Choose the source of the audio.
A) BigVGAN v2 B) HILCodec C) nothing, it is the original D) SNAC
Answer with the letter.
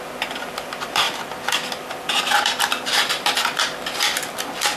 A